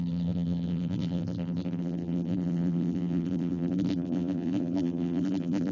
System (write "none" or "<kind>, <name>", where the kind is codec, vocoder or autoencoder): vocoder, BigVGAN v2